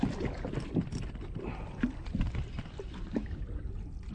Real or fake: real